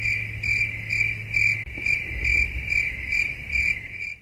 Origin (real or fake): real